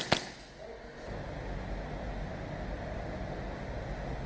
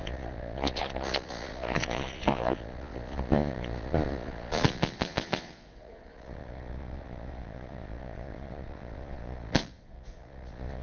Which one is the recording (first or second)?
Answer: first